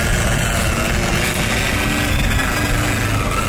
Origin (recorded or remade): recorded